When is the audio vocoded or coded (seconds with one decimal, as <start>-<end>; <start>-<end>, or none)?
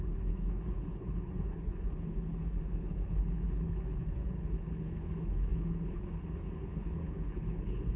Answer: 0.0-8.0